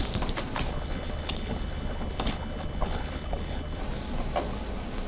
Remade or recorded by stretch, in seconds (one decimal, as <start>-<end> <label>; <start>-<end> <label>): 0.0-0.7 recorded; 0.7-3.8 remade; 3.8-5.1 recorded

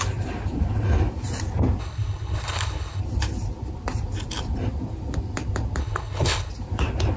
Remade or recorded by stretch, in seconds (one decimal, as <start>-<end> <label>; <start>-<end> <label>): 0.0-1.8 recorded; 1.8-3.0 remade; 3.0-5.8 recorded; 5.8-6.5 remade; 6.5-7.2 recorded

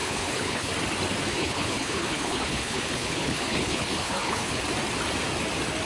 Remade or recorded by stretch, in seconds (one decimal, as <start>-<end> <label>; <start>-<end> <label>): 0.0-0.7 remade; 0.7-1.3 recorded; 1.3-4.6 remade; 4.6-5.8 recorded